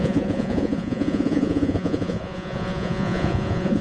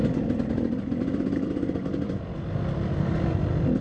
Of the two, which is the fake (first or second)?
first